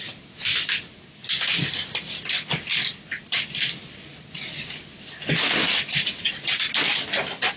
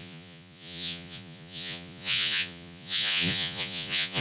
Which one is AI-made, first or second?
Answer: second